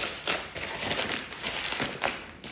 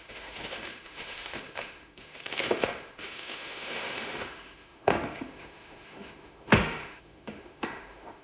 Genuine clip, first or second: first